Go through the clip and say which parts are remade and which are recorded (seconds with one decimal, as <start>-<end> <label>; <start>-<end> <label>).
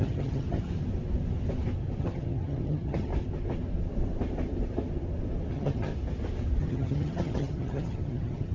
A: 0.0-0.7 remade; 0.7-2.0 recorded; 2.0-3.1 remade; 3.1-5.5 recorded; 5.5-5.9 remade; 5.9-6.6 recorded; 6.6-8.5 remade